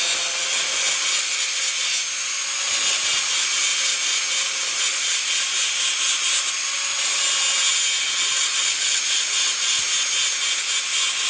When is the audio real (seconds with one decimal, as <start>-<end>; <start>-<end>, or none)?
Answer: 0.0-8.3; 9.9-11.3